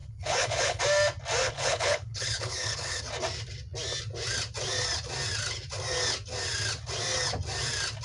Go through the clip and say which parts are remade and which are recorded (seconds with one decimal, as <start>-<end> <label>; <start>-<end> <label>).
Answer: 0.0-0.8 remade; 0.8-1.4 recorded; 1.4-3.0 remade; 3.0-8.0 recorded